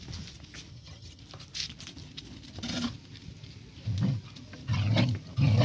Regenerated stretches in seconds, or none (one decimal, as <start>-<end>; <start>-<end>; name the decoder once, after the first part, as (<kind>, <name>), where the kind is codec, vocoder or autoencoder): 0.7-1.2 (vocoder, HiFi-GAN)